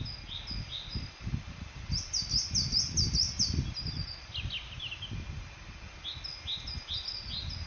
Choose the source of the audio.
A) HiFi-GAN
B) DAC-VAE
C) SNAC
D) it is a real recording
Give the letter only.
D